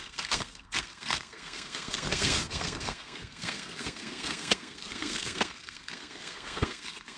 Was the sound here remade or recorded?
remade